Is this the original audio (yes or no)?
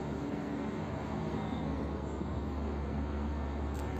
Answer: no